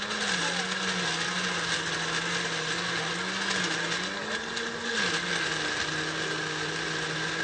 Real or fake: real